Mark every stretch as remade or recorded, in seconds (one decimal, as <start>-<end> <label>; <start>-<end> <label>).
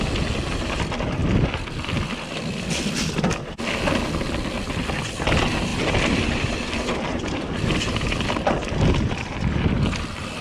0.0-5.7 recorded; 5.7-10.4 remade